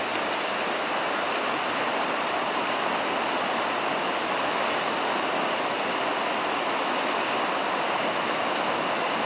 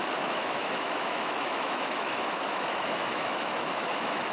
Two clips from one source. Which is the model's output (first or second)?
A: second